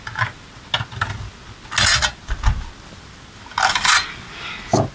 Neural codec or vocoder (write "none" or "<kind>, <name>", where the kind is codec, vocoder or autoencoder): none